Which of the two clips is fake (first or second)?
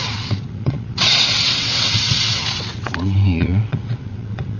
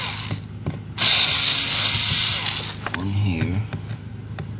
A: first